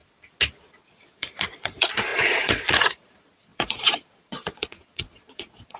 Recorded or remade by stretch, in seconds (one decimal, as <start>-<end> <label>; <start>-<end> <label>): 0.0-0.7 recorded; 0.7-5.8 remade